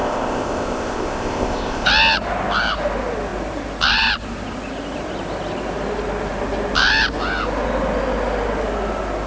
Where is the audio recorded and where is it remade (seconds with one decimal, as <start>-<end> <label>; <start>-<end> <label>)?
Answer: 0.0-1.9 remade; 1.9-9.3 recorded

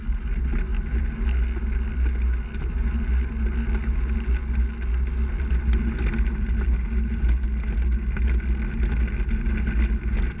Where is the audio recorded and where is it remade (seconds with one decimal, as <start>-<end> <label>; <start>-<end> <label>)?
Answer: 0.0-10.4 recorded